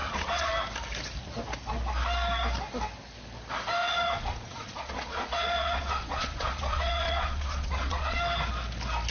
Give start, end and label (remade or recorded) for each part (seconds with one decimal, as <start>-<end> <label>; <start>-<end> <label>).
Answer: 0.0-0.5 remade; 0.5-3.8 recorded; 3.8-8.2 remade; 8.2-9.1 recorded